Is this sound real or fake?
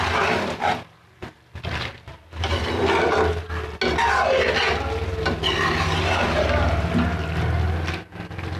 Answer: real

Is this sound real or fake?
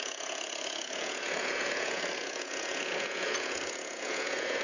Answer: fake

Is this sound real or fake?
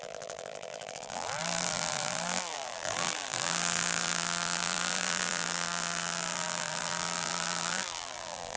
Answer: fake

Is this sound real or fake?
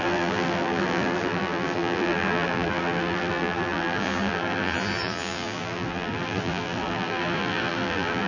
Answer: fake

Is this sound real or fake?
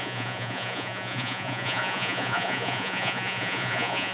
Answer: fake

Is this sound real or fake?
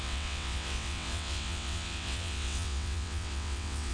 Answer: fake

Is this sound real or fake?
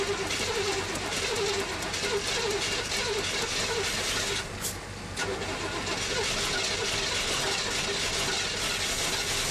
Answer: real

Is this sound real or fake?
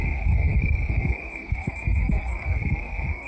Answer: fake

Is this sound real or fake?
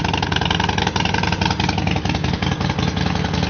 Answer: real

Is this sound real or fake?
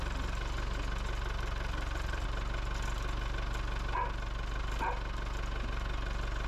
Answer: real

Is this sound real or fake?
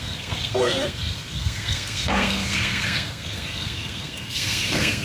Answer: fake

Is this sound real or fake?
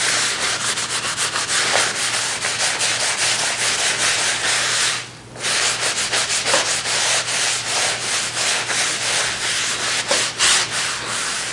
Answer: real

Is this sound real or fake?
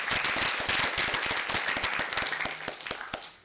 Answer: real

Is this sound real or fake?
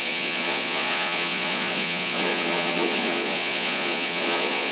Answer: fake